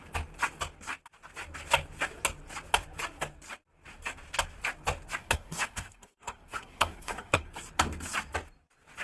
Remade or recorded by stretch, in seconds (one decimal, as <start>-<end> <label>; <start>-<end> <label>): 0.0-5.2 recorded; 5.2-7.5 remade; 7.5-9.0 recorded